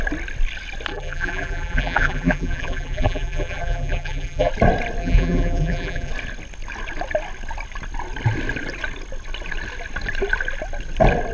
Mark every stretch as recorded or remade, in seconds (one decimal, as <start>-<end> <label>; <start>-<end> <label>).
0.0-0.9 recorded; 0.9-4.5 remade; 4.5-5.0 recorded; 5.0-6.1 remade; 6.1-11.3 recorded